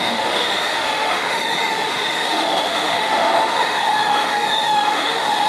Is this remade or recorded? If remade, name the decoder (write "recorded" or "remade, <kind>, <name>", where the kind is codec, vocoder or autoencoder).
remade, autoencoder, DAC-VAE